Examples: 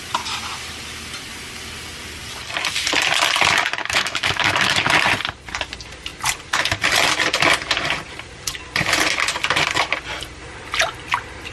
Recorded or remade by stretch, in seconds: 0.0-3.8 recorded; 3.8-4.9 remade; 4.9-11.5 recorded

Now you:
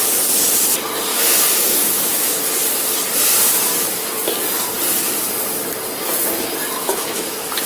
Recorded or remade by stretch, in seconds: 0.0-1.1 recorded; 1.1-2.4 remade; 2.4-6.8 recorded; 6.8-7.7 remade

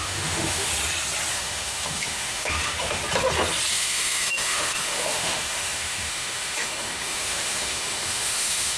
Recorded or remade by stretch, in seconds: 0.0-0.7 remade; 0.7-1.3 recorded; 1.3-3.0 remade; 3.0-3.7 recorded; 3.7-8.8 remade

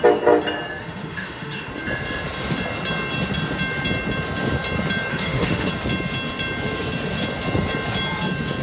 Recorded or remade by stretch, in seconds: 0.0-0.8 recorded; 0.8-1.7 remade; 1.7-5.1 recorded; 5.1-5.7 remade; 5.7-8.6 recorded

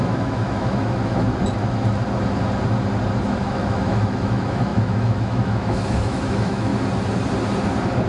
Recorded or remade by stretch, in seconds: 0.0-1.3 remade; 1.3-3.2 recorded; 3.2-6.7 remade; 6.7-8.1 recorded

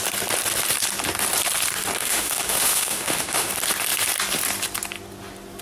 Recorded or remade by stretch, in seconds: 0.0-2.0 recorded; 2.0-3.5 remade; 3.5-5.6 recorded

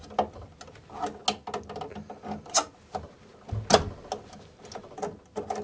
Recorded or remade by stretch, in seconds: 0.0-5.6 recorded

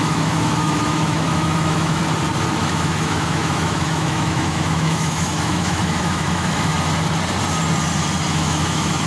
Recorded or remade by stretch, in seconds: 0.0-2.0 remade; 2.0-2.6 recorded; 2.6-6.7 remade; 6.7-8.3 recorded; 8.3-9.1 remade